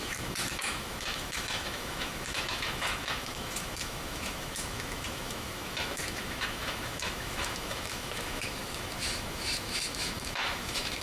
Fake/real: fake